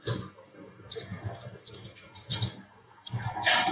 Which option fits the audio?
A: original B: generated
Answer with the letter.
B